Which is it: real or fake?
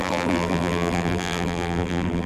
fake